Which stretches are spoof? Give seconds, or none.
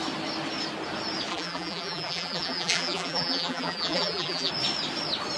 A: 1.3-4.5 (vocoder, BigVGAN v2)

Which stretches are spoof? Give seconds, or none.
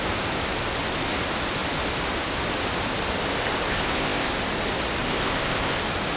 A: 3.7-4.3 (codec, ZipCodec); 5.1-5.8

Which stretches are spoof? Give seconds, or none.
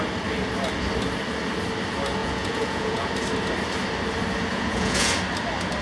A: 2.2-3.1 (vocoder, Vocos); 4.5-5.1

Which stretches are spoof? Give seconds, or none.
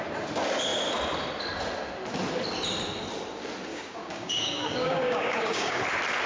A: 3.7-5.8 (codec, DAC)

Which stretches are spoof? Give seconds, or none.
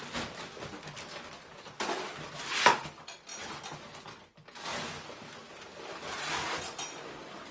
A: none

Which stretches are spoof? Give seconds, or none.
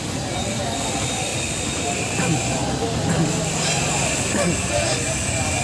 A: none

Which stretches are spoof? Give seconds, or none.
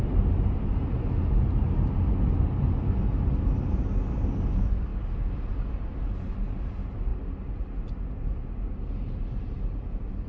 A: none